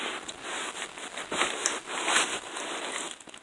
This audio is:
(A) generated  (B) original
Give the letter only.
B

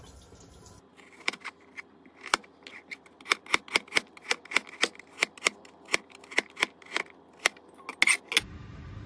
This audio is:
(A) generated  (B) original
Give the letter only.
B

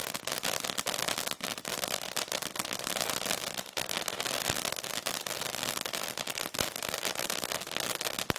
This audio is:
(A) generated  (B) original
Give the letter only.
B